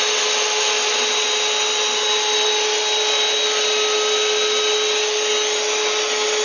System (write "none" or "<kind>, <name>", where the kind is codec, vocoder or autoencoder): none